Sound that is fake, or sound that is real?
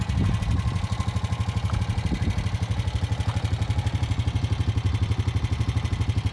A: real